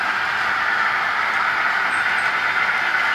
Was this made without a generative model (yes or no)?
yes